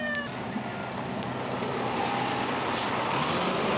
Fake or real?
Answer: real